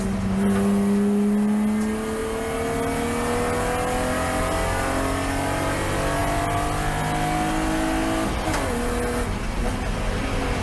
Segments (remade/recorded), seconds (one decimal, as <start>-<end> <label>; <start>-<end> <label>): 0.0-10.6 recorded